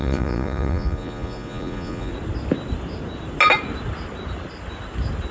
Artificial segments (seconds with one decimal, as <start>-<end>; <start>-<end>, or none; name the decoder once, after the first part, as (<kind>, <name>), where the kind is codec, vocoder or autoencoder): 0.0-2.1 (vocoder, Vocos)